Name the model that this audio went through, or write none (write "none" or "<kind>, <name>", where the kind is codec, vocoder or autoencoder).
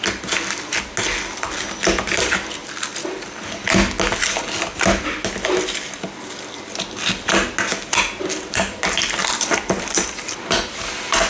none